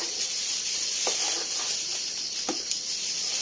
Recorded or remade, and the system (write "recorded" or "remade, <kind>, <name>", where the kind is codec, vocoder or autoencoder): recorded